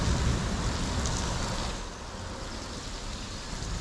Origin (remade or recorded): recorded